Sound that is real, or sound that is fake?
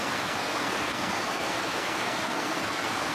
fake